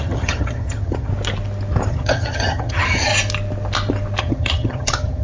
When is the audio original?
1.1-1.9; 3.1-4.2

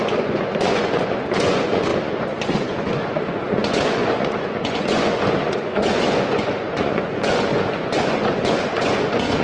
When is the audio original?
none

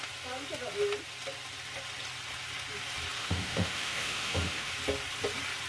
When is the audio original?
0.0-3.2; 4.7-5.7